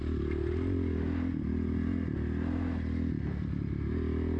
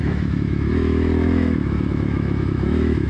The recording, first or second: first